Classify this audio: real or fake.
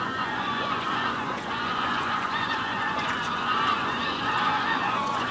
fake